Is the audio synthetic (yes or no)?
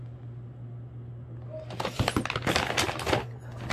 no